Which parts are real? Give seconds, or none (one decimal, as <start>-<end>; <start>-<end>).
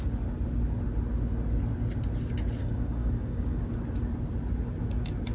0.0-2.6; 3.6-5.3